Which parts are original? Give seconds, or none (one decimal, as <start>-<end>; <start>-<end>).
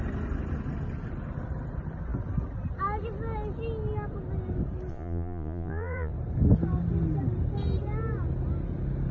0.0-4.9; 6.1-9.1